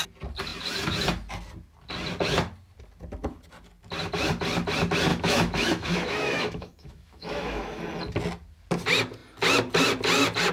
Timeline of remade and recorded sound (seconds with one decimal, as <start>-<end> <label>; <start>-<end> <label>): 0.0-5.1 recorded; 5.1-7.8 remade; 7.8-10.5 recorded